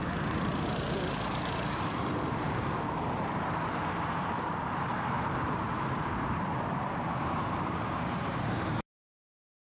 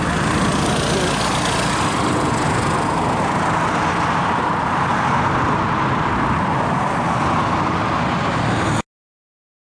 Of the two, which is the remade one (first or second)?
first